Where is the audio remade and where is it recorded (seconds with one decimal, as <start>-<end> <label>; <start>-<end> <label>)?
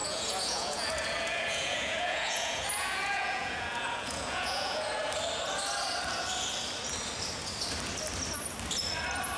0.0-4.9 remade; 4.9-9.4 recorded